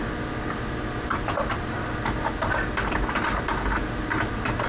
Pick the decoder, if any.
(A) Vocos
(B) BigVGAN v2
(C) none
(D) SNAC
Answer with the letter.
C